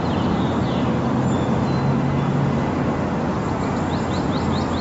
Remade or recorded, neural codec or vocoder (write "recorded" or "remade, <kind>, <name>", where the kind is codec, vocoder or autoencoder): recorded